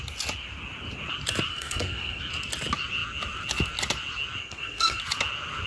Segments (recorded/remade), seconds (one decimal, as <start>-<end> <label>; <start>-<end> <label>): 0.0-1.5 recorded; 1.5-2.2 remade; 2.2-4.4 recorded; 4.4-5.0 remade; 5.0-5.7 recorded

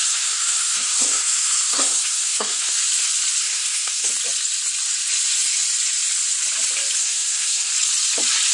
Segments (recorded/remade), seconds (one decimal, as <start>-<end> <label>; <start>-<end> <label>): 0.0-2.8 remade; 2.8-3.4 recorded; 3.4-4.1 remade; 4.1-7.0 recorded; 7.0-7.7 remade; 7.7-8.5 recorded

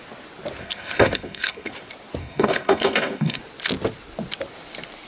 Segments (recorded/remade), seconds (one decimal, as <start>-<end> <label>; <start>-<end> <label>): 0.0-0.6 recorded; 0.6-1.7 remade; 1.7-2.2 recorded; 2.2-3.4 remade; 3.4-5.1 recorded

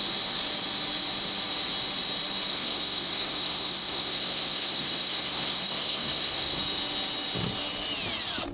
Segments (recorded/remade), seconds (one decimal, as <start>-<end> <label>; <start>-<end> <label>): 0.0-2.5 recorded; 2.5-6.6 remade; 6.6-8.5 recorded